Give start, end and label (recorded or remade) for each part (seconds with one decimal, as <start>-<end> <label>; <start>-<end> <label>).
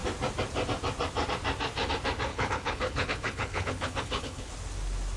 0.0-2.3 recorded; 2.3-4.5 remade; 4.5-5.2 recorded